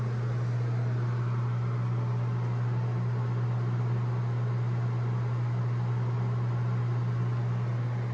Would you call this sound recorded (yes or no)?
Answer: yes